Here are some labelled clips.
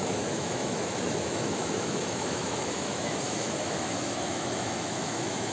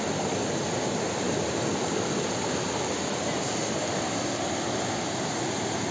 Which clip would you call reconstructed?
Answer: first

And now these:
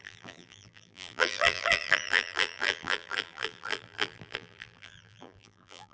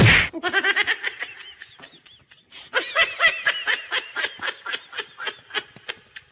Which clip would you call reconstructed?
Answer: first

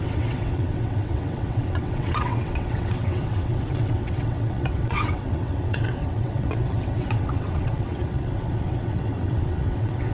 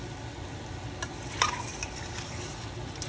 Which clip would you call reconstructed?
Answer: first